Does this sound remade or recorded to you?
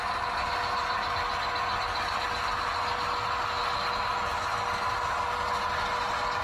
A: recorded